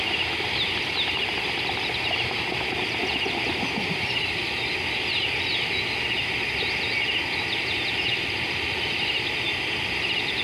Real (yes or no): yes